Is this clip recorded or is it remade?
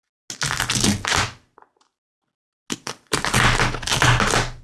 recorded